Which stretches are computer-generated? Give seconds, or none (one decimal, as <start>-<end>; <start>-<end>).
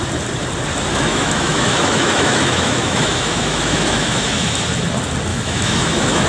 0.9-4.6; 5.3-6.3